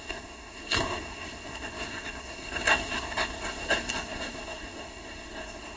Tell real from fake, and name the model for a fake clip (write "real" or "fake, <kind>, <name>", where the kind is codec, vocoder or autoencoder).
fake, codec, SNAC